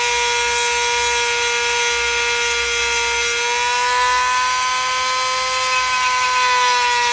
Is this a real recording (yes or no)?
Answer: yes